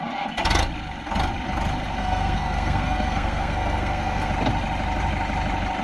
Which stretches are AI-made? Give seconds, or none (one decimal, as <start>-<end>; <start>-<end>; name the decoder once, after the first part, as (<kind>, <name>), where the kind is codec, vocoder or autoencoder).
2.0-4.3 (codec, SNAC)